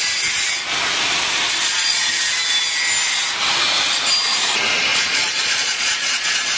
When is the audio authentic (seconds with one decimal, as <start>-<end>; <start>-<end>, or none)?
0.0-1.6; 2.2-4.9